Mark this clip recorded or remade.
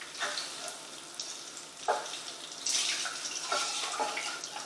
remade